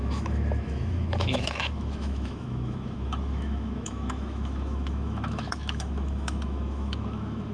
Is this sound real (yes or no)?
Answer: no